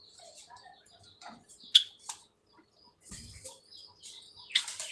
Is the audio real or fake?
real